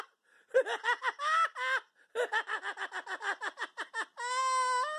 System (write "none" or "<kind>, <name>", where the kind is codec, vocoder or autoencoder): none